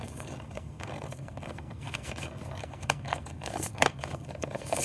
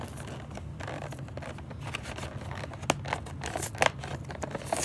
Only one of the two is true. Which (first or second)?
second